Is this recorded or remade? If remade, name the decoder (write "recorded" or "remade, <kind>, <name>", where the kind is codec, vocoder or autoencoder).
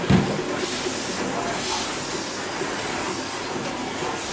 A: recorded